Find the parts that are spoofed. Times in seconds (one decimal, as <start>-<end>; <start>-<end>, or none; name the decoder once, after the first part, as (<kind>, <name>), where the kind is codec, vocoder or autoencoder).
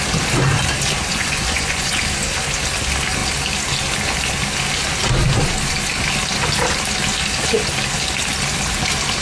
1.1-2.0 (vocoder, Vocos)